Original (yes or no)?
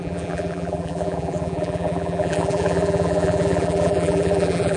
no